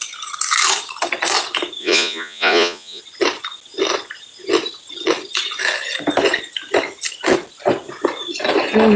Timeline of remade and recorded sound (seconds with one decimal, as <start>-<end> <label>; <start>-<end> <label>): 0.0-1.8 recorded; 1.8-3.0 remade; 3.0-9.0 recorded